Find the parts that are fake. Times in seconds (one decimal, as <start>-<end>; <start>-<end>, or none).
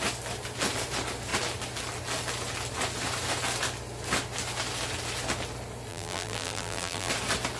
5.9-7.1